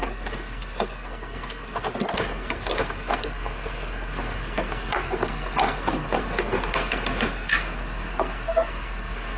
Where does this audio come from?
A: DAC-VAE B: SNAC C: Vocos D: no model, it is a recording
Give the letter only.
B